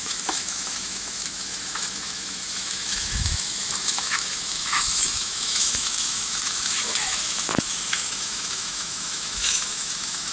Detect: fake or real fake